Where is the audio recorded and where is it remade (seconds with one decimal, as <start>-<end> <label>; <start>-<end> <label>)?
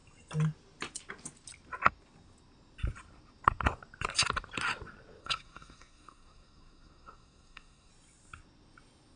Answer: 0.0-5.2 recorded; 5.2-7.9 remade; 7.9-9.2 recorded